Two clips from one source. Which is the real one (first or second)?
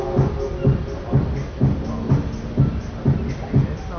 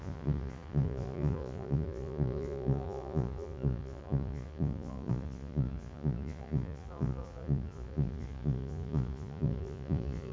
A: first